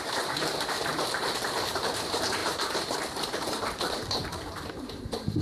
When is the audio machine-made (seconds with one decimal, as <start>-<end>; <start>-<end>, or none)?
0.0-0.9; 1.7-5.4